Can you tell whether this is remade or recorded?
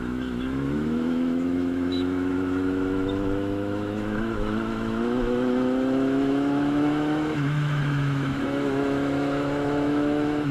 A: remade